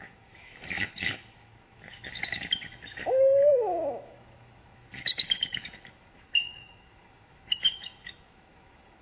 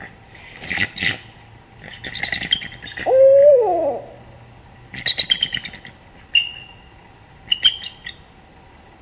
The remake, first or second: first